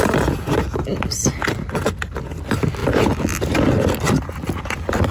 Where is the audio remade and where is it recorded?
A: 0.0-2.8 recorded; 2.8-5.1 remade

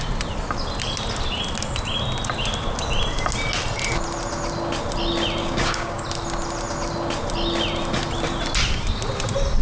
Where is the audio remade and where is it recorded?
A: 0.0-5.4 recorded; 5.4-6.0 remade; 6.0-9.6 recorded

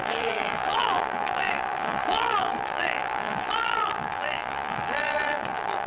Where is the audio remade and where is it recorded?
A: 0.0-5.9 remade

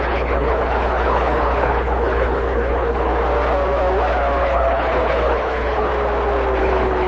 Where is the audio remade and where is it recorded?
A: 0.0-3.1 remade; 3.1-4.4 recorded; 4.4-5.9 remade; 5.9-6.6 recorded; 6.6-7.1 remade